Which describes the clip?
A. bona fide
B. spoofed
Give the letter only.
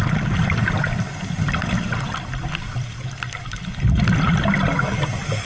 A